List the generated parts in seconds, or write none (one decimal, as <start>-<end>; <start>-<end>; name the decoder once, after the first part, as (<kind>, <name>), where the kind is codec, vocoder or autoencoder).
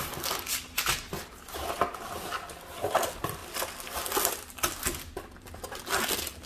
none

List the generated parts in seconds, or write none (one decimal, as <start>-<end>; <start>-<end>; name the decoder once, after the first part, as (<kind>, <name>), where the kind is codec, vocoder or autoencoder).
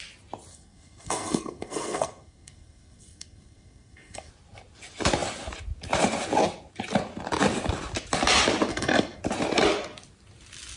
0.5-4.3 (codec, SNAC); 8.7-9.2